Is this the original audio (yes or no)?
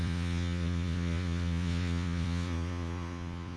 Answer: no